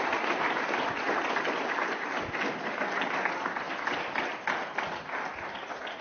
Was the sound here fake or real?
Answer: real